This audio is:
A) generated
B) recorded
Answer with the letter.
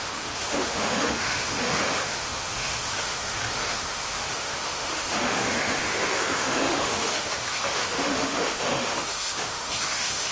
A